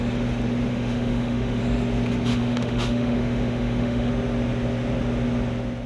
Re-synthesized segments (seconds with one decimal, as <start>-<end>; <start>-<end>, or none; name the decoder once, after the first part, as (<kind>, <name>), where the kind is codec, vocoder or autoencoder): 0.7-1.6 (autoencoder, DAC-VAE); 2.3-4.1